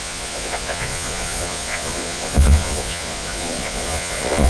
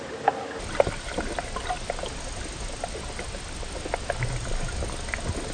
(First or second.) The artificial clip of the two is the first